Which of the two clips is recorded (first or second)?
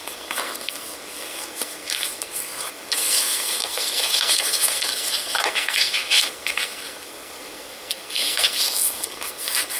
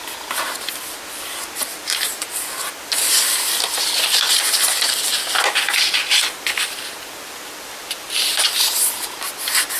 second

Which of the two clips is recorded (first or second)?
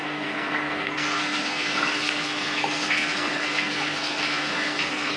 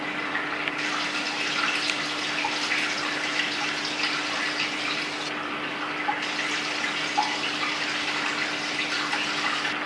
second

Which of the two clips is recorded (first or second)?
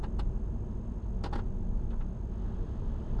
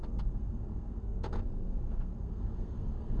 first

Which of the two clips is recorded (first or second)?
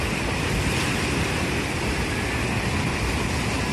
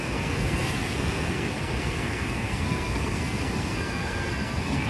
first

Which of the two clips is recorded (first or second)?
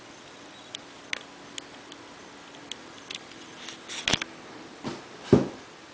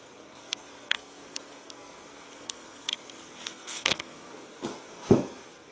first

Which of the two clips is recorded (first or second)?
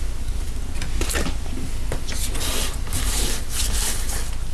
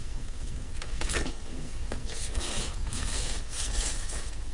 first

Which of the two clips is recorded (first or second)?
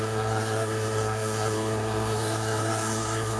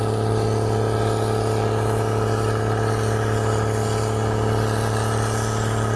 second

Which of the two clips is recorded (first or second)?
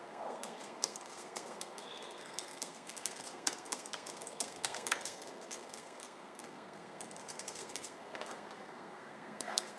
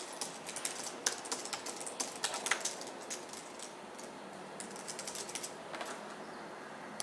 second